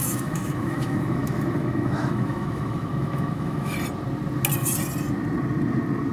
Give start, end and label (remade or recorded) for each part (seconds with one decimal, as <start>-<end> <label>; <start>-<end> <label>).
0.0-3.7 remade; 3.7-6.1 recorded